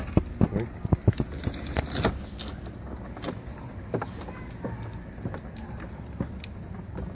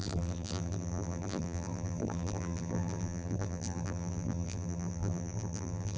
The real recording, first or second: first